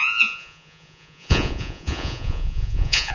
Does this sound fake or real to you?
fake